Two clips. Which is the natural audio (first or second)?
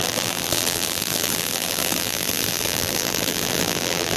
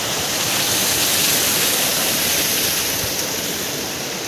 second